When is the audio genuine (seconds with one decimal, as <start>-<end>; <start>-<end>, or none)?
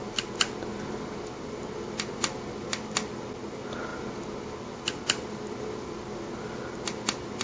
0.0-7.4